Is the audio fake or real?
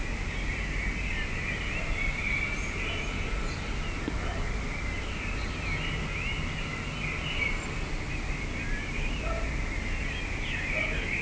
real